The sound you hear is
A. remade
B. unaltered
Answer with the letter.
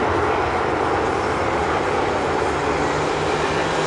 B